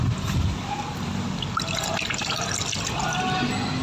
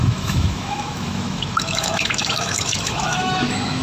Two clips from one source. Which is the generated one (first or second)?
second